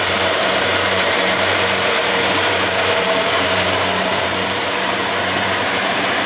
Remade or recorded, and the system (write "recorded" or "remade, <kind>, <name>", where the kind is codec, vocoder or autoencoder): remade, vocoder, BigVGAN v2